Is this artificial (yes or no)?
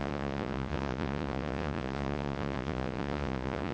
yes